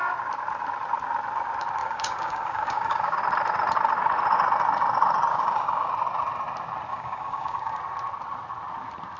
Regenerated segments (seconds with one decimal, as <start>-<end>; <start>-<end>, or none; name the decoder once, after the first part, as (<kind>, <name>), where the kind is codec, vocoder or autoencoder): 1.8-3.2 (codec, DAC); 5.3-5.9; 6.9-7.8